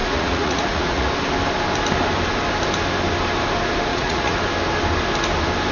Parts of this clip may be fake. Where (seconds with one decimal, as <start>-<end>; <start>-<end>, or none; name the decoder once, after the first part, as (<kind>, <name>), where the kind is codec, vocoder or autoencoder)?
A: 0.0-1.1 (vocoder, Vocos); 3.9-4.4